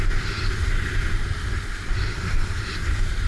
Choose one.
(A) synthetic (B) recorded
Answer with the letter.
B